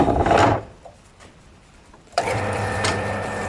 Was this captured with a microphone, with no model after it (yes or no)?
no